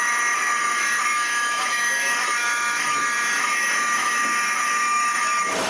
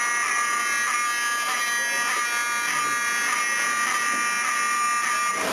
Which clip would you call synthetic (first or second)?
first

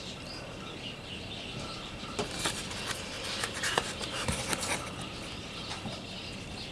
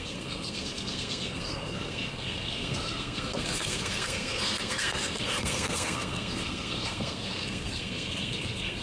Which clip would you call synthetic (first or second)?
second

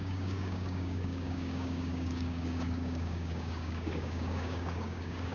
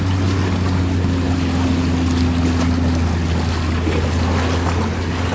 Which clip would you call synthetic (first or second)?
first